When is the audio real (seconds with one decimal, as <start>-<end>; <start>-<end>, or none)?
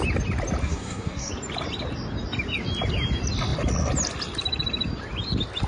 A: 0.0-0.6; 1.3-5.7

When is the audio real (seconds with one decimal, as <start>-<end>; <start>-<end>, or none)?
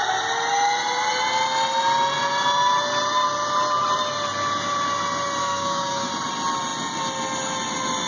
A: 0.0-5.4; 6.1-8.1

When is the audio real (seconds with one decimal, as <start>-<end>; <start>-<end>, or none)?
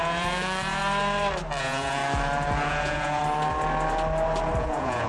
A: 0.8-1.6; 2.0-2.7; 3.2-4.6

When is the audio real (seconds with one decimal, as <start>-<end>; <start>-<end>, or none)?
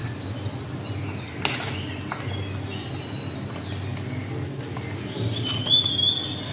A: 0.0-6.5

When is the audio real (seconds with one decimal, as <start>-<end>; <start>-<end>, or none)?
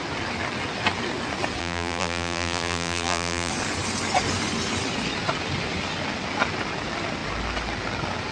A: 0.0-1.6; 3.5-8.3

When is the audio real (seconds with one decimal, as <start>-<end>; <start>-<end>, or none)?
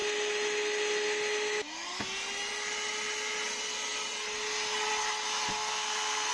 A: 0.0-5.5